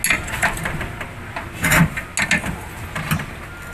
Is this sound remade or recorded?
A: recorded